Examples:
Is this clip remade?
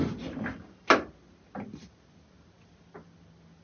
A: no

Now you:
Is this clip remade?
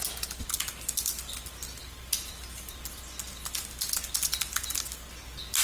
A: no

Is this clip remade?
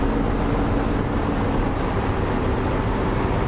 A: no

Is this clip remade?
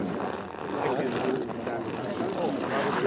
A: no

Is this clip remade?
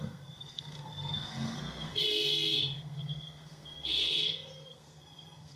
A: yes